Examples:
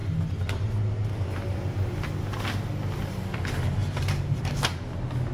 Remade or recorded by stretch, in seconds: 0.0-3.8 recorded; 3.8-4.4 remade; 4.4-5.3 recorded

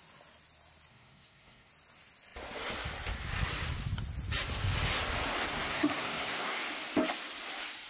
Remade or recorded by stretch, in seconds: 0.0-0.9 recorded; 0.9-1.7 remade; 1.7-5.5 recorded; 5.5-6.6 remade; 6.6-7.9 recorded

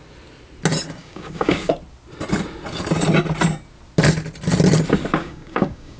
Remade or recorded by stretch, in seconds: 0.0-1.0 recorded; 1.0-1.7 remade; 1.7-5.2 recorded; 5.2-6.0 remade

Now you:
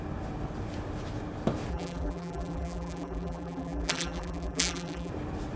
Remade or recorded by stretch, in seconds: 0.0-1.7 recorded; 1.7-5.1 remade; 5.1-5.6 recorded

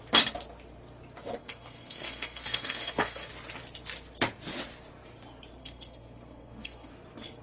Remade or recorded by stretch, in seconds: 0.0-1.4 recorded; 1.4-3.3 remade; 3.3-5.6 recorded; 5.6-6.9 remade; 6.9-7.4 recorded

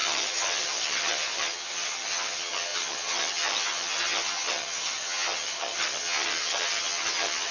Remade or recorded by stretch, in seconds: 0.0-7.5 remade

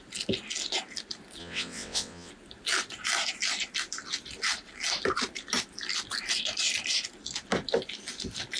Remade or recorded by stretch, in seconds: 0.0-1.4 recorded; 1.4-2.3 remade; 2.3-8.6 recorded

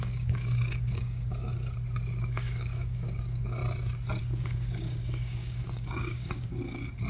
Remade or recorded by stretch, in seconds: 0.0-1.5 remade; 1.5-2.2 recorded; 2.2-3.6 remade; 3.6-4.2 recorded; 4.2-7.1 remade